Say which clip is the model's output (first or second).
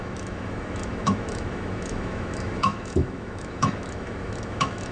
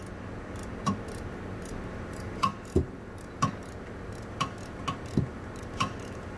first